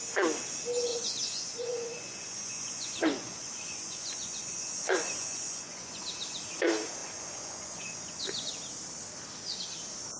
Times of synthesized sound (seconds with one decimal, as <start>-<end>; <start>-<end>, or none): 0.9-6.0; 7.0-8.5